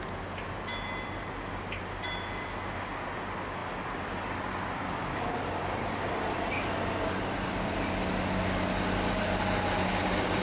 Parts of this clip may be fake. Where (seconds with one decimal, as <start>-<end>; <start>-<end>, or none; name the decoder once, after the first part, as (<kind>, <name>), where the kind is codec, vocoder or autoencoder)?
none